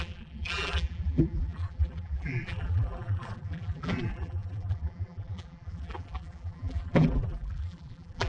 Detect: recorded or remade remade